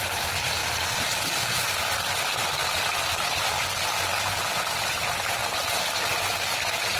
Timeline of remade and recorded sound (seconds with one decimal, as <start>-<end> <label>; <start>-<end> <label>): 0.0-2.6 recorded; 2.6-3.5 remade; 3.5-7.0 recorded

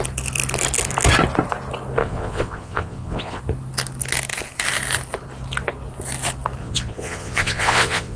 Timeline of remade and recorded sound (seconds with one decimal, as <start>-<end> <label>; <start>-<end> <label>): 0.0-2.0 recorded; 2.0-3.4 remade; 3.4-6.6 recorded; 6.6-8.2 remade

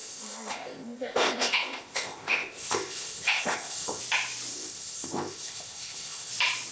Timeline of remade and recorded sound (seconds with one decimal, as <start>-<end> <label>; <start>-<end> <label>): 0.0-4.0 remade; 4.0-4.5 recorded; 4.5-6.3 remade; 6.3-6.7 recorded